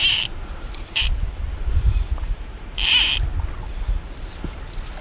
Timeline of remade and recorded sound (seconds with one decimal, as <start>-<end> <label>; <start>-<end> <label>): 0.0-3.0 remade; 3.0-5.0 recorded